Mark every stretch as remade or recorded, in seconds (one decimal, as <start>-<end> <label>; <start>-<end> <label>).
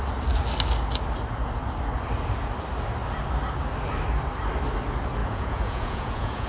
0.0-5.2 recorded; 5.2-6.5 remade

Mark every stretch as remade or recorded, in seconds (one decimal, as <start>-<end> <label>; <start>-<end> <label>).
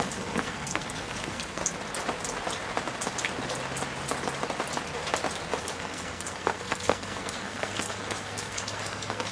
0.0-1.6 remade; 1.6-5.6 recorded; 5.6-9.3 remade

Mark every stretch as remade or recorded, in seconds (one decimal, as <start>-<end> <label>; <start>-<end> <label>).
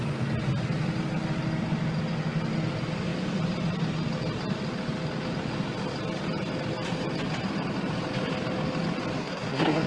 0.0-9.2 recorded; 9.2-9.9 remade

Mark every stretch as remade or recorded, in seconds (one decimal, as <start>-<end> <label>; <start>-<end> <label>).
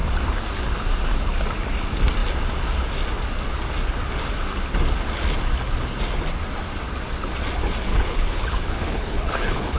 0.0-7.9 recorded; 7.9-9.8 remade